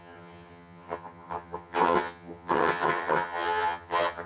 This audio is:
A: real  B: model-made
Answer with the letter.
B